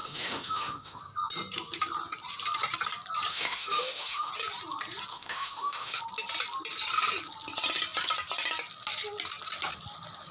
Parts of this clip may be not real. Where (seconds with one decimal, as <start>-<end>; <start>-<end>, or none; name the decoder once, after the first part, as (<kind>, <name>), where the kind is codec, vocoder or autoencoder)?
0.0-1.0 (autoencoder, DAC-VAE); 3.3-4.3; 5.1-6.0